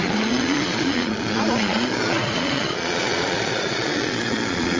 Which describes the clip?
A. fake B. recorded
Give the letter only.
A